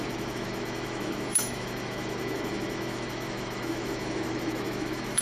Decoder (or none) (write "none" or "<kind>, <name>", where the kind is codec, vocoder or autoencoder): autoencoder, DAC-VAE